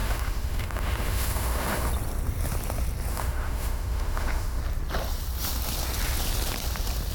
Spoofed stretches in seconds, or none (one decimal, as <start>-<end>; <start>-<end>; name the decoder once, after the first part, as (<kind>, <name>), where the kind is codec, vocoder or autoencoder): 0.0-1.9 (autoencoder, DAC-VAE); 3.1-4.6